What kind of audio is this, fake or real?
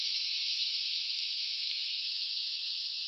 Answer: fake